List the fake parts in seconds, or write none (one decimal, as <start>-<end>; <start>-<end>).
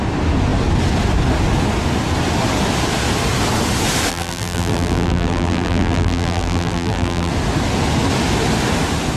4.1-7.3